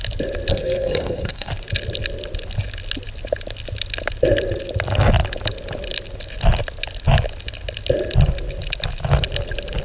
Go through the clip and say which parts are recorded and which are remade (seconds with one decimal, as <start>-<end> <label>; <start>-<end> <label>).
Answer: 0.0-0.5 recorded; 0.5-1.5 remade; 1.5-9.8 recorded